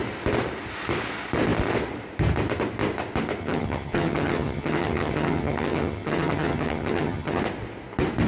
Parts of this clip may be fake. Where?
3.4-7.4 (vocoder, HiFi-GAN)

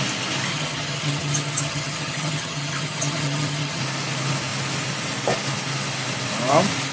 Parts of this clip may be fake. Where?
0.5-3.8 (vocoder, HiFi-GAN)

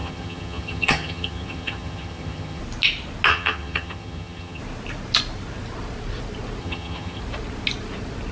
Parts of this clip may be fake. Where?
0.0-2.6 (vocoder, HiFi-GAN); 3.3-4.6; 6.6-7.2

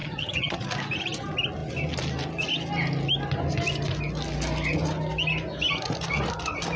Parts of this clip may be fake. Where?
0.0-0.6 (vocoder, HiFi-GAN)